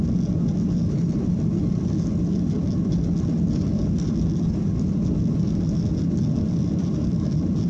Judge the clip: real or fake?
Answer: real